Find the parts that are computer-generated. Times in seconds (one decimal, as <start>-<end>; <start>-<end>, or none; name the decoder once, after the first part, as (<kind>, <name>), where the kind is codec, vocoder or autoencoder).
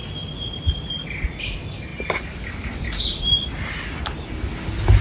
none